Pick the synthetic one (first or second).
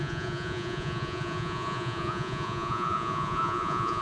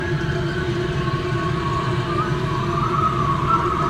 first